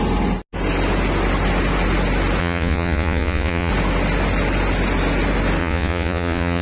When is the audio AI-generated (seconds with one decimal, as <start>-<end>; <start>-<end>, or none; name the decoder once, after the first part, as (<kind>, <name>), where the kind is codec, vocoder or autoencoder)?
2.4-3.7 (vocoder, Vocos); 5.6-6.6